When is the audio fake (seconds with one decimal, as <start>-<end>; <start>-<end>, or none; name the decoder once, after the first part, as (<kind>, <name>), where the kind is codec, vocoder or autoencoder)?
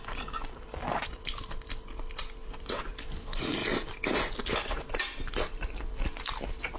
none